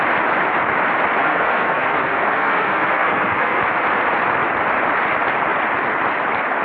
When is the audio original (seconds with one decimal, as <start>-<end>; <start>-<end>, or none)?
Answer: 0.0-1.2; 3.6-6.6